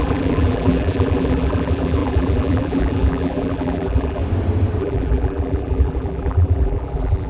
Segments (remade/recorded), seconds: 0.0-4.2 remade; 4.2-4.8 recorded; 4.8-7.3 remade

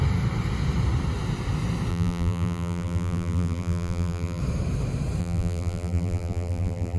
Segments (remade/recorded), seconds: 0.0-1.9 recorded; 1.9-4.4 remade; 4.4-5.2 recorded; 5.2-7.0 remade

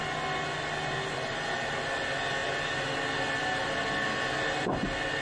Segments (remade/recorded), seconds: 0.0-5.2 recorded

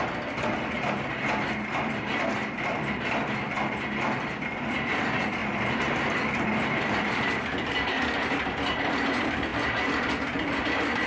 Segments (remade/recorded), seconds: 0.0-9.5 remade; 9.5-10.6 recorded; 10.6-11.1 remade

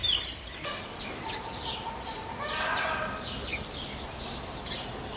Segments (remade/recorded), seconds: 0.0-3.0 remade; 3.0-5.2 recorded

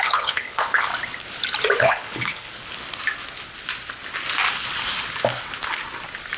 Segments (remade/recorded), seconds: 0.0-0.9 remade; 0.9-1.8 recorded; 1.8-2.5 remade; 2.5-6.4 recorded

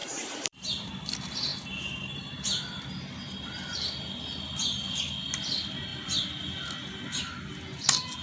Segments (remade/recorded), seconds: 0.0-0.9 remade; 0.9-8.2 recorded